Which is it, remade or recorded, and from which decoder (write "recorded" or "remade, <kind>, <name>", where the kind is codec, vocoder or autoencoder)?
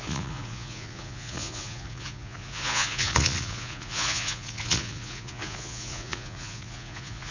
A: remade, vocoder, Vocos